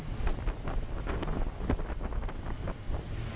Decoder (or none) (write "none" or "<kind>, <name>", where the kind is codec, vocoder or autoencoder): none